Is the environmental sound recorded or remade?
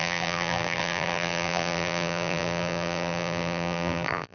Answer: remade